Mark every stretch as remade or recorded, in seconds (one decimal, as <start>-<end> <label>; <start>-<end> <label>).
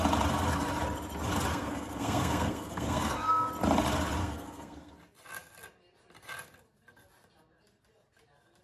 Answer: 0.0-1.5 recorded; 1.5-3.5 remade; 3.5-4.2 recorded; 4.2-4.9 remade; 4.9-8.6 recorded